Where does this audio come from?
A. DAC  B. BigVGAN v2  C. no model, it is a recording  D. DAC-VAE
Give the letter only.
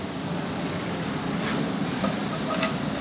C